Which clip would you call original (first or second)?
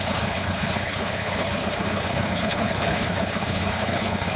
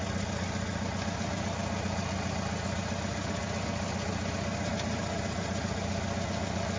second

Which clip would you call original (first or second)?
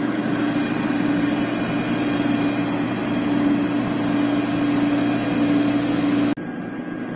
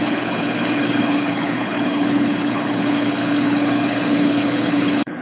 first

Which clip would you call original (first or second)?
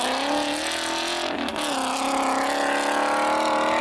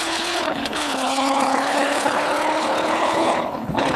first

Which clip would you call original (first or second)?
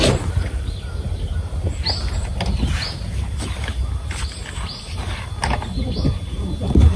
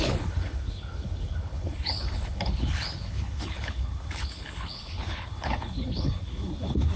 first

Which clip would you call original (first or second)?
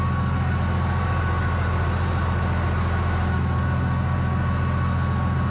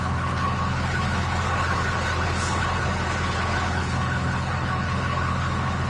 first